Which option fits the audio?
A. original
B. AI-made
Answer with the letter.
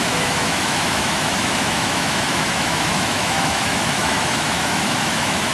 B